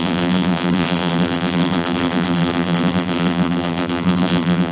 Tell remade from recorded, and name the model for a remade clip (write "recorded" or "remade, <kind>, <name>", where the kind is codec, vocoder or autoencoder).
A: remade, vocoder, BigVGAN v2